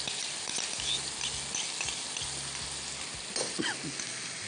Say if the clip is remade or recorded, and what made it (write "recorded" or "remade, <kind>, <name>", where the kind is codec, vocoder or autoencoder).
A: recorded